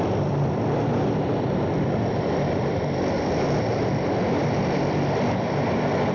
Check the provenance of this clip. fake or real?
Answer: fake